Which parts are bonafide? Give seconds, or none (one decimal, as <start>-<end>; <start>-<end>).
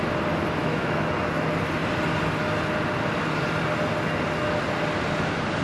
0.0-0.6; 1.1-5.6